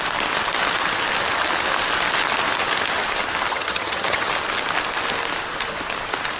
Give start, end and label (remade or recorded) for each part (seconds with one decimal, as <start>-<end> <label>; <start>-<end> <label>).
0.0-3.5 recorded; 3.5-4.3 remade; 4.3-6.4 recorded